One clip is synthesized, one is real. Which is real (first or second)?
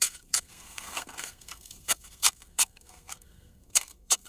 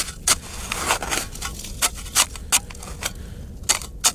second